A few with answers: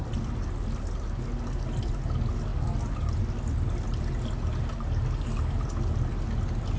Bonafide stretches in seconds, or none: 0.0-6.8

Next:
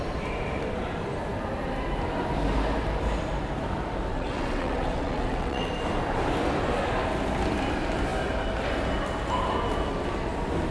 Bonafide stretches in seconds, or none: 0.0-4.1; 5.7-10.7